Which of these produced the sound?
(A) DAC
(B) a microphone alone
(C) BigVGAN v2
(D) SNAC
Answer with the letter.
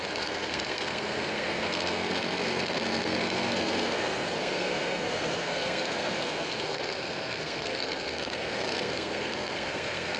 D